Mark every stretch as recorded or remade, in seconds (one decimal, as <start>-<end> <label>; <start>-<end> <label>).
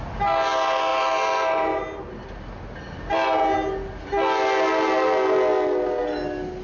0.0-6.6 recorded